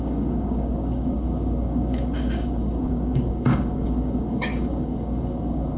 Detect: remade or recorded remade